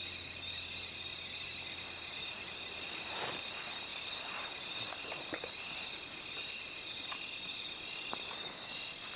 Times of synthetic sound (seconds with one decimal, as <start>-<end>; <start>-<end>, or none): none